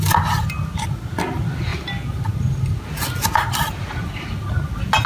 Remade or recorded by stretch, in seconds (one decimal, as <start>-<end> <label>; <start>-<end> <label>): 0.0-5.1 recorded